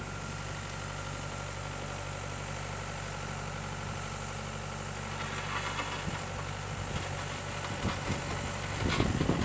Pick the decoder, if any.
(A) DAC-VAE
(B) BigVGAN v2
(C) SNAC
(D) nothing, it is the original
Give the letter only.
D